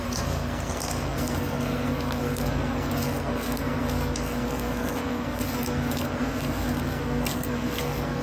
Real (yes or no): no